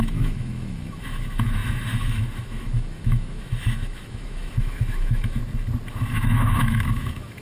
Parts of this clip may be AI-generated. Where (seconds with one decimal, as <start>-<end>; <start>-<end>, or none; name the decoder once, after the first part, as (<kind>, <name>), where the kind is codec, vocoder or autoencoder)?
0.0-5.4 (autoencoder, DAC-VAE); 5.9-7.4